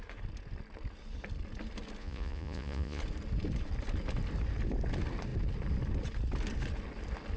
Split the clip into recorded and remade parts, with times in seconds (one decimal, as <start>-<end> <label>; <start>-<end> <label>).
0.0-2.0 recorded; 2.0-3.0 remade; 3.0-7.4 recorded